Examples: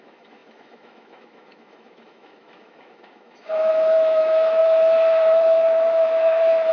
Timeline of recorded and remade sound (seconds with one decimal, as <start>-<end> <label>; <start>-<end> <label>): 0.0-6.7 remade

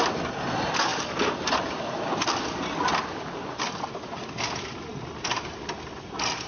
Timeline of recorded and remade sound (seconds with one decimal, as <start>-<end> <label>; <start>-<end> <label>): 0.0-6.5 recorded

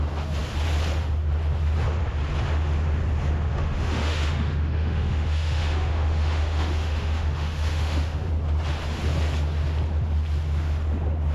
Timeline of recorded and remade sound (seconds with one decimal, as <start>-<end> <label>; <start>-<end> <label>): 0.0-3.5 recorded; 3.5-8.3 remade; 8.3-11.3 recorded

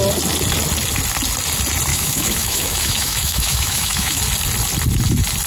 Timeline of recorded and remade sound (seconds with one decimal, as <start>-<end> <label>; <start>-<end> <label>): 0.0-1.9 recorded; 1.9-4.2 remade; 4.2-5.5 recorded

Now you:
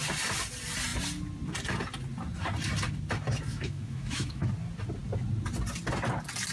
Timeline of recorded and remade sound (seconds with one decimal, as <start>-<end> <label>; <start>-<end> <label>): 0.0-3.5 recorded; 3.5-4.5 remade; 4.5-6.5 recorded

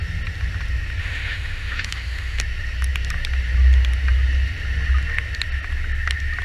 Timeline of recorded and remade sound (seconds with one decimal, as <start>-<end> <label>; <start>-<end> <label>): 0.0-1.0 recorded; 1.0-2.4 remade; 2.4-6.4 recorded

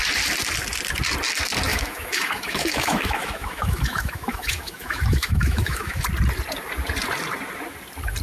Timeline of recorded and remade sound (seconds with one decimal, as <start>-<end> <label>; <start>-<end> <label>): 0.0-1.7 recorded; 1.7-6.0 remade; 6.0-8.2 recorded

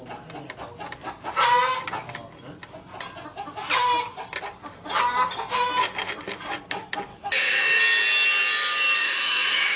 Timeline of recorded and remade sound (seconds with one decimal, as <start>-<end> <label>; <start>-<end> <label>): 0.0-7.1 recorded; 7.1-7.8 remade; 7.8-9.0 recorded; 9.0-9.8 remade